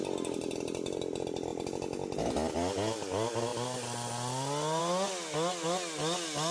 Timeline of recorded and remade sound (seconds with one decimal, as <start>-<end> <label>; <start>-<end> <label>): 0.0-6.5 recorded